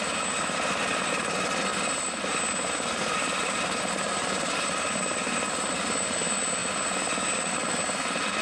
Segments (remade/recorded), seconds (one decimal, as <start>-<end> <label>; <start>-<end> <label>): 0.0-8.4 recorded